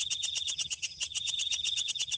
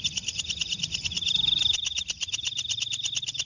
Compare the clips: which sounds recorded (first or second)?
second